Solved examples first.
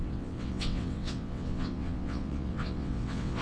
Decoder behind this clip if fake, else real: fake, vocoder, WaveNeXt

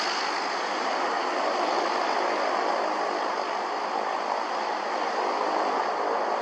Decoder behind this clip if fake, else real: real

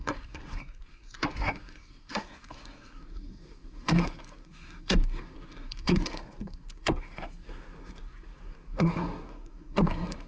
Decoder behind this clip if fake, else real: fake, codec, SNAC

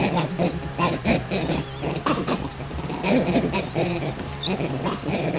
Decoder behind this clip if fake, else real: fake, vocoder, BigVGAN v2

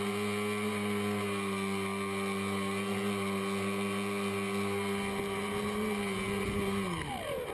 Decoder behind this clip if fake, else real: real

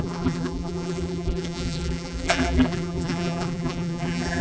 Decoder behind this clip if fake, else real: fake, vocoder, BigVGAN v2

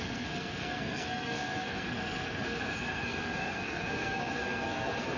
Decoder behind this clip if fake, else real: fake, codec, SNAC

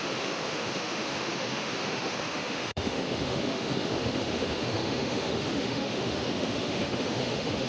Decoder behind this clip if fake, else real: fake, autoencoder, DAC-VAE